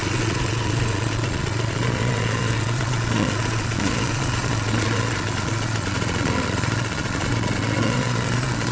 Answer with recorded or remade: remade